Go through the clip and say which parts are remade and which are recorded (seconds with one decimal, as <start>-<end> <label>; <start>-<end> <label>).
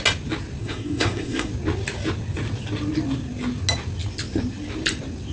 0.0-0.6 recorded; 0.6-1.5 remade; 1.5-5.3 recorded